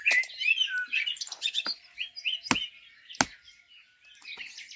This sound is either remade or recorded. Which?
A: recorded